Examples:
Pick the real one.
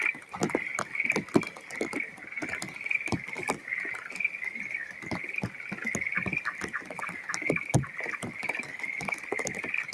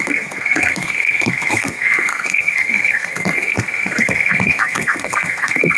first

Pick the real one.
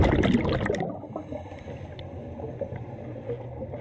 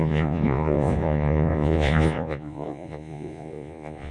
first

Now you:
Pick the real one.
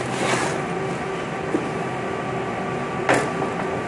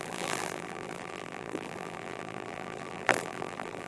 first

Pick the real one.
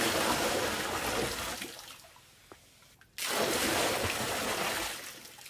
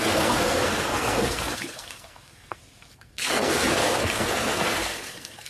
first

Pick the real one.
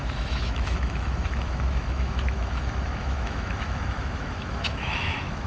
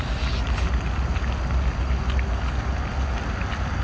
second